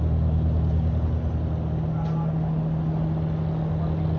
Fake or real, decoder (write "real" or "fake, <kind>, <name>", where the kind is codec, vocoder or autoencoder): real